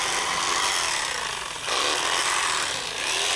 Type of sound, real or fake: real